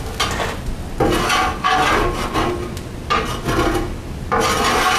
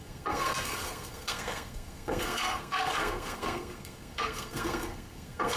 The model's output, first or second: second